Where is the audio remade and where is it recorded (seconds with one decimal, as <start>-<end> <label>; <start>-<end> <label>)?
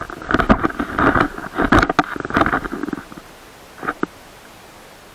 0.0-5.1 recorded